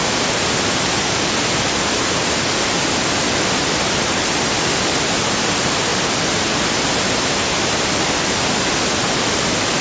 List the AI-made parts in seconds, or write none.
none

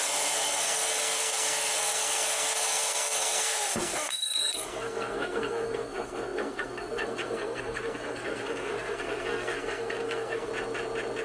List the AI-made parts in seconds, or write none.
0.0-10.5 (codec, SNAC)

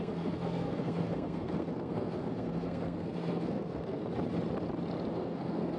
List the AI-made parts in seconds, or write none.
0.0-4.0 (codec, SNAC); 5.1-5.8

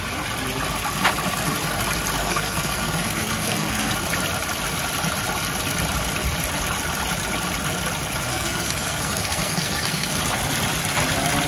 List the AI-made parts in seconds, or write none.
2.2-3.9 (codec, SNAC); 8.3-10.2

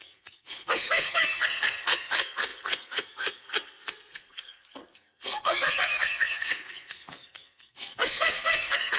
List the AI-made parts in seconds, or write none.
0.0-9.0 (codec, SNAC)

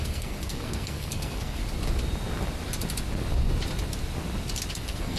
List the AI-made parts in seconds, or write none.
0.0-1.6 (codec, SNAC); 4.7-5.2

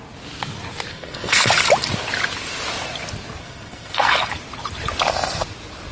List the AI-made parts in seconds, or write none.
0.9-1.5 (codec, SNAC); 3.4-4.3

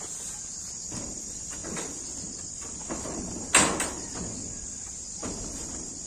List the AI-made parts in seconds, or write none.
none